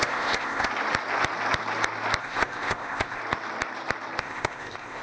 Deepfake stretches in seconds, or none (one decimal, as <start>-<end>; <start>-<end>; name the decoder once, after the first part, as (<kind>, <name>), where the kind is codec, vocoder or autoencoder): 0.0-0.7 (codec, ZipCodec); 2.2-3.2; 4.2-5.0

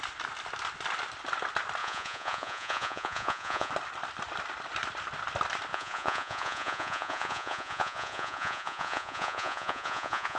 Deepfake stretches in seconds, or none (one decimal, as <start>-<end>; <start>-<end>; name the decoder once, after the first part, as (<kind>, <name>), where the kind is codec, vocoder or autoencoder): 1.8-3.7 (vocoder, Vocos); 5.7-10.4

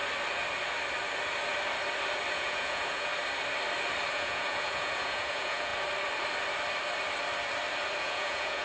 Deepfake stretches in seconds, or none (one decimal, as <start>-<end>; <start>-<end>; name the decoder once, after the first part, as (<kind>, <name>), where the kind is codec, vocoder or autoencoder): 2.3-3.1 (vocoder, Vocos); 4.1-5.7; 8.0-8.6

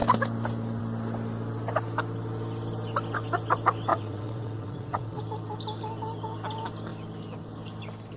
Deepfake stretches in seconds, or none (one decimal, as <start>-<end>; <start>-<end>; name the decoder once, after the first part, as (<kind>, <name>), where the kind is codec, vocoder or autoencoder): 3.9-5.2 (vocoder, WaveNeXt)